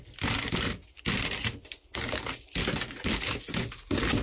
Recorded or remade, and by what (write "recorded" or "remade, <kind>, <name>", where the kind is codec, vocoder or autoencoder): recorded